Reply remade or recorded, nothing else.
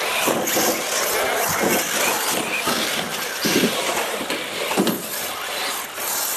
recorded